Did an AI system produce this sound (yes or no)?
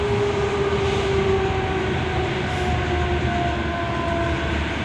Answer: no